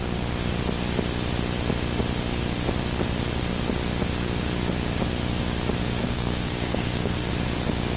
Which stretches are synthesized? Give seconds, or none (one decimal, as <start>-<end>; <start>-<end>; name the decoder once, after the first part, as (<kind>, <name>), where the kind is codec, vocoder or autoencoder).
6.0-7.3 (codec, SNAC)